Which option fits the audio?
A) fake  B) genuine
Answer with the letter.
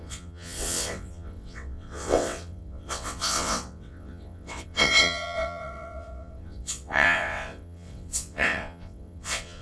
A